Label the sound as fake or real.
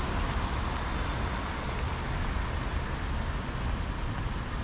real